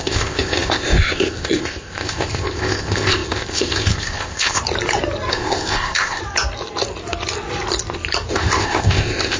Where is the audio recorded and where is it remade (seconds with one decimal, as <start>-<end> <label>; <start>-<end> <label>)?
0.0-4.6 remade; 4.6-5.3 recorded; 5.3-6.2 remade; 6.2-8.3 recorded; 8.3-9.4 remade